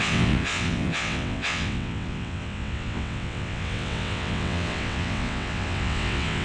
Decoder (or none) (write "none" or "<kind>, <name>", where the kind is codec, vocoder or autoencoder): vocoder, WaveNeXt